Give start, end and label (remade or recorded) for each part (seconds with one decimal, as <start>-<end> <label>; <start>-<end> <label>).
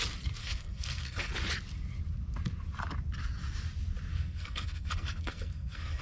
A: 0.0-0.4 recorded; 0.4-1.3 remade; 1.3-4.1 recorded; 4.1-6.0 remade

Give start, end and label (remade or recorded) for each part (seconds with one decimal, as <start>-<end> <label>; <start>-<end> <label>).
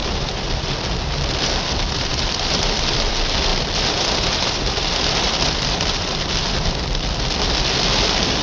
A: 0.0-0.9 remade; 0.9-2.1 recorded; 2.1-3.1 remade; 3.1-3.5 recorded; 3.5-6.7 remade; 6.7-8.4 recorded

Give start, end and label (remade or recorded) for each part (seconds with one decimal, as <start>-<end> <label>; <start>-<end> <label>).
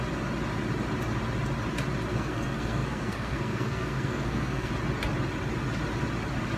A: 0.0-2.1 recorded; 2.1-4.7 remade; 4.7-6.6 recorded